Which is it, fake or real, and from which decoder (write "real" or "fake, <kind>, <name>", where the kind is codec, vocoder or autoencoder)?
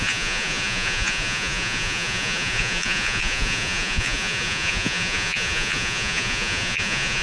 fake, vocoder, Vocos